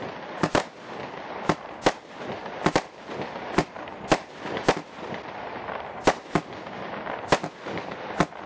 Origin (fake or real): real